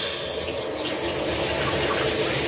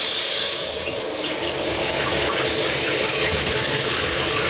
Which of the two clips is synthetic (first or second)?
second